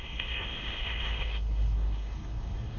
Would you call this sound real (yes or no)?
no